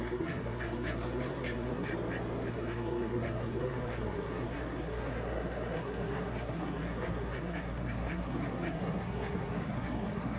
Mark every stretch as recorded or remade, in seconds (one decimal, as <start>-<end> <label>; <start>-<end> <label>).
0.0-1.9 remade; 1.9-2.5 recorded; 2.5-10.4 remade

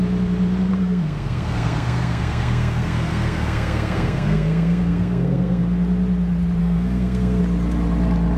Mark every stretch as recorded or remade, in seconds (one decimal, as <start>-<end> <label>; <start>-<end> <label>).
0.0-0.7 recorded; 0.7-5.6 remade; 5.6-6.6 recorded; 6.6-7.4 remade; 7.4-8.4 recorded

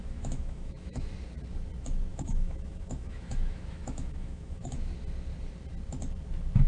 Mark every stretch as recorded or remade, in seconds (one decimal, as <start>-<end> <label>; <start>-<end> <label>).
0.0-1.1 remade; 1.1-2.1 recorded; 2.1-4.9 remade; 4.9-6.7 recorded

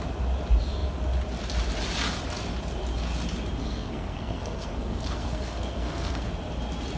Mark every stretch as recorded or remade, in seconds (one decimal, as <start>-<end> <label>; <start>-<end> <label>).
0.0-3.6 recorded; 3.6-6.3 remade; 6.3-7.0 recorded